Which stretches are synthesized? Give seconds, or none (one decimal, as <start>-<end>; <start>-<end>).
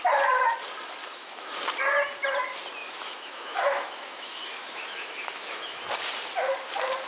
1.0-1.6; 2.8-5.8